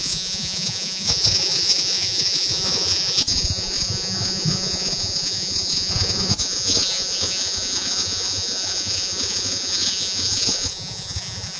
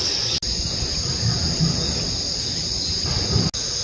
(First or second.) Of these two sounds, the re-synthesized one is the first